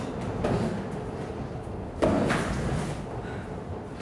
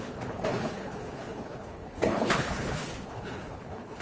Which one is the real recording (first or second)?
first